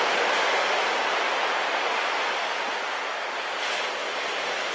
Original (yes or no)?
yes